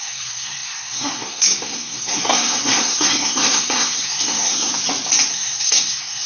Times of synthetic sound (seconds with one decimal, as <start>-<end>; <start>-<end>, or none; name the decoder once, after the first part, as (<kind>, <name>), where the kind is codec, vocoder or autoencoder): 0.0-4.7 (codec, SNAC); 5.3-6.3